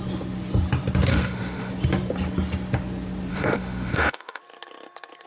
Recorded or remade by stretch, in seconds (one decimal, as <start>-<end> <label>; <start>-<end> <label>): 0.0-1.1 recorded; 1.1-1.7 remade; 1.7-3.3 recorded; 3.3-4.4 remade; 4.4-5.3 recorded